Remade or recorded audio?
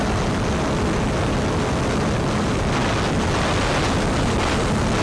recorded